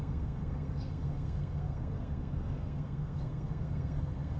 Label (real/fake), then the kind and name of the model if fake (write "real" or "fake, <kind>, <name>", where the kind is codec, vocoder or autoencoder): fake, codec, SNAC